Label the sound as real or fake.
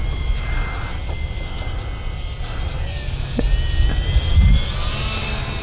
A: real